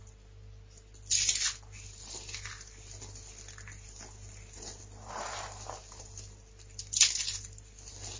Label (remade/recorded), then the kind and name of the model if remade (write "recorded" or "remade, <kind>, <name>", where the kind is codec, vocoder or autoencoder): recorded